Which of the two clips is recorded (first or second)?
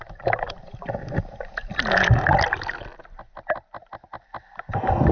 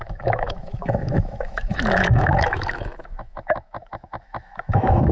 first